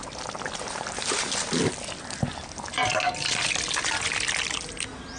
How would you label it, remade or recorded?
recorded